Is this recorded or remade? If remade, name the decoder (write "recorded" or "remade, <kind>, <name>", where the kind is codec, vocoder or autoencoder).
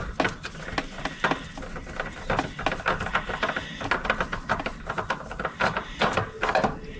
recorded